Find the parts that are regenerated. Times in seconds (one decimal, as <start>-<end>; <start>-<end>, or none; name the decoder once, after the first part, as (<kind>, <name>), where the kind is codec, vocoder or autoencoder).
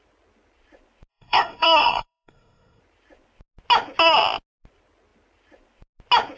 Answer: 1.1-2.8 (codec, SNAC)